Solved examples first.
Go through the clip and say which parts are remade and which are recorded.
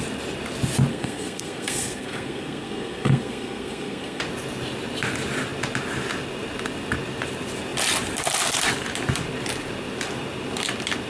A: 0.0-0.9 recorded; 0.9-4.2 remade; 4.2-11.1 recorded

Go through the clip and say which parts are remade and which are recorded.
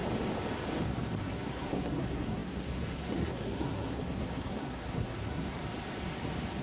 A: 0.0-1.2 recorded; 1.2-5.6 remade; 5.6-6.6 recorded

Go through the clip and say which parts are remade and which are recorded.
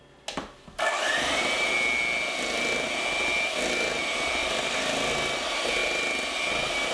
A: 0.0-6.9 recorded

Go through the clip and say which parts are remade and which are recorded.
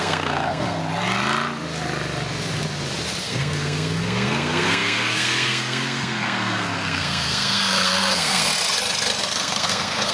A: 0.0-0.8 remade; 0.8-3.2 recorded; 3.2-8.5 remade; 8.5-9.2 recorded; 9.2-10.1 remade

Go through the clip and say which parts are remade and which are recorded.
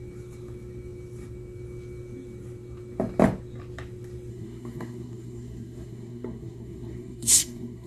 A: 0.0-4.3 recorded; 4.3-7.9 remade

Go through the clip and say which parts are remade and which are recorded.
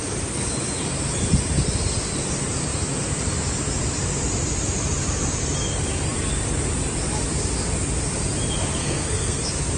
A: 0.0-8.8 recorded; 8.8-9.4 remade; 9.4-9.8 recorded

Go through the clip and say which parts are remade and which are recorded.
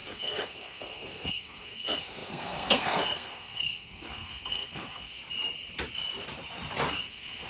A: 0.0-5.2 remade; 5.2-6.9 recorded; 6.9-7.5 remade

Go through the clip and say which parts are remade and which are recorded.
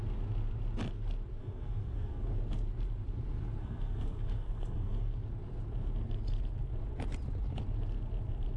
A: 0.0-1.4 recorded; 1.4-2.3 remade; 2.3-3.6 recorded; 3.6-5.1 remade; 5.1-8.6 recorded